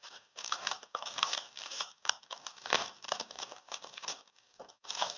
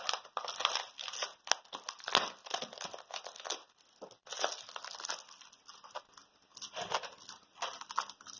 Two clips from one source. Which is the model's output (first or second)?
first